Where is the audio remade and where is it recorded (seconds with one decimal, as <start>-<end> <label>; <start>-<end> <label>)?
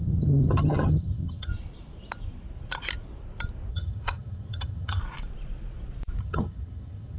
0.0-1.5 remade; 1.5-3.7 recorded; 3.7-5.0 remade; 5.0-6.2 recorded; 6.2-7.2 remade